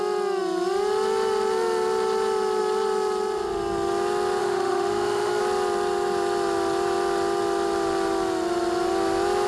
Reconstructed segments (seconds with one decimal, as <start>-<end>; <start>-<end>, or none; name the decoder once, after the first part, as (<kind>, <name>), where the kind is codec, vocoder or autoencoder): 4.4-5.4 (autoencoder, DAC-VAE)